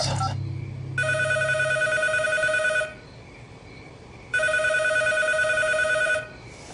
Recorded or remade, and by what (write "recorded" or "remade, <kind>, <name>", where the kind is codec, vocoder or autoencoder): recorded